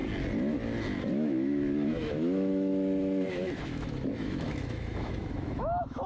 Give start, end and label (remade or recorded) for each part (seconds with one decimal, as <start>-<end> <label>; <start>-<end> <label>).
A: 0.0-1.1 recorded; 1.1-6.1 remade